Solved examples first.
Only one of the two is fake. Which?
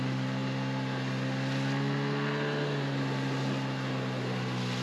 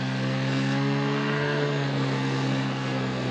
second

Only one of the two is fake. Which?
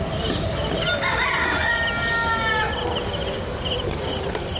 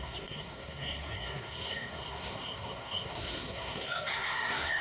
second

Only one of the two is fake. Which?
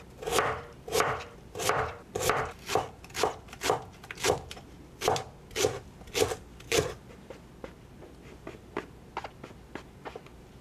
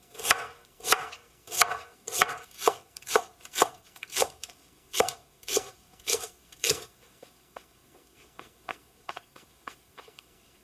second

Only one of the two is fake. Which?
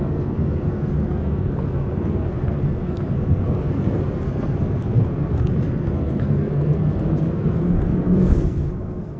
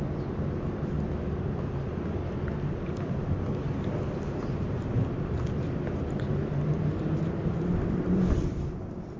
first